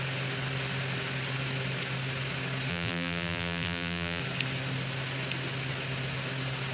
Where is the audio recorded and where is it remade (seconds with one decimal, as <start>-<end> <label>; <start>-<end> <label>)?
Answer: 0.0-2.7 recorded; 2.7-4.2 remade; 4.2-6.7 recorded